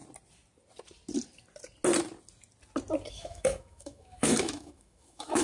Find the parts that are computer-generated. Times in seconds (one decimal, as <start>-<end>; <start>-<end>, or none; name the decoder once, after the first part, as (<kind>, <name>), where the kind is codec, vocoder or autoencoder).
3.1-5.4 (autoencoder, DAC-VAE)